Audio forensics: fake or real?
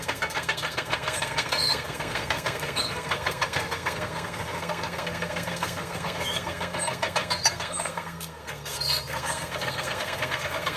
fake